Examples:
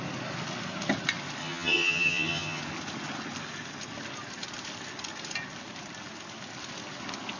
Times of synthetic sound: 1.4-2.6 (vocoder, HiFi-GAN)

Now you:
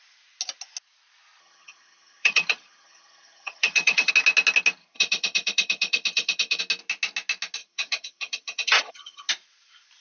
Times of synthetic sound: 1.4-4.1 (vocoder, HiFi-GAN); 4.8-6.6; 7.6-9.3